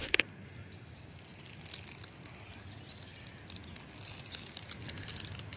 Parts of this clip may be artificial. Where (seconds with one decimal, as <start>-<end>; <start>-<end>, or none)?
none